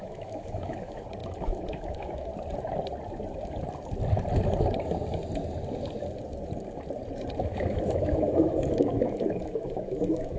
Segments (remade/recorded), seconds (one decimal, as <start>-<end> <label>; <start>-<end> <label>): 0.0-2.3 remade; 2.3-7.4 recorded; 7.4-10.4 remade